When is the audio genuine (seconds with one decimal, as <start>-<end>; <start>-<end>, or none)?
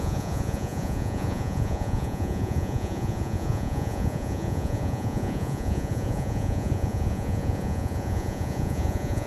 none